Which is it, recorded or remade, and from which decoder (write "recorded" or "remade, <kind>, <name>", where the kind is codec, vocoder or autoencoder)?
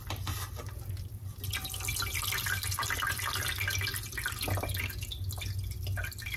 recorded